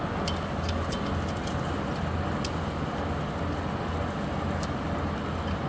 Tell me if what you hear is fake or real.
real